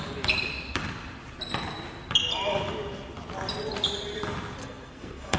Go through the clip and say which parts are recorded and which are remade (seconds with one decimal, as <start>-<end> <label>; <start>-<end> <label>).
0.0-4.6 recorded; 4.6-5.4 remade